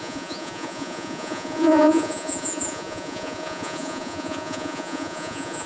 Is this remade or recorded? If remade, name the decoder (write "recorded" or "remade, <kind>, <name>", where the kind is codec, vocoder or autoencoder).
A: remade, vocoder, Vocos